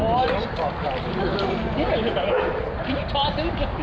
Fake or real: real